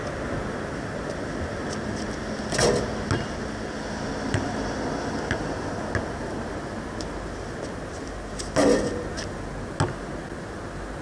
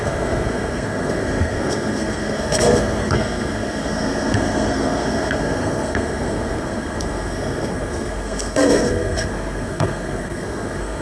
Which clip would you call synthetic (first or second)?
second